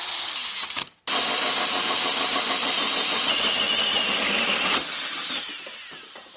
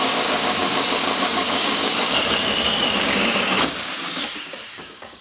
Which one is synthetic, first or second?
second